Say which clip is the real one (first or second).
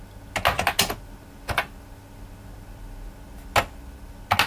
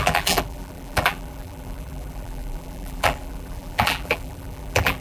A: first